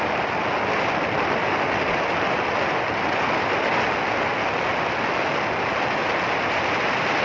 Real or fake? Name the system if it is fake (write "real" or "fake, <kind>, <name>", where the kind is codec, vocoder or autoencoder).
real